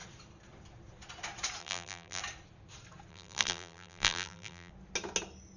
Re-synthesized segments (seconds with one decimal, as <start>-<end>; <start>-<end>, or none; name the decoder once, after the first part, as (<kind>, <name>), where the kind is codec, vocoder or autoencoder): 1.6-2.2 (vocoder, BigVGAN v2); 3.1-4.7